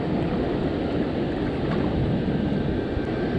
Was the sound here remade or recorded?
recorded